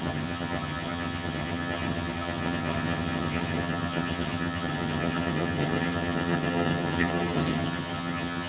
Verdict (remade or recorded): remade